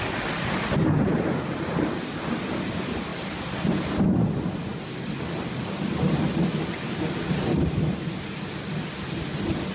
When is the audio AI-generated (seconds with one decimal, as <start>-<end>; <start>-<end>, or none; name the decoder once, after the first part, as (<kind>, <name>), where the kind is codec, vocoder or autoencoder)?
none